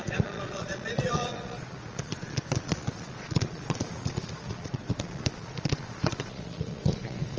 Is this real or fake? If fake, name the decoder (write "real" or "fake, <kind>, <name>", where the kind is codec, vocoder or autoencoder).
fake, vocoder, Vocos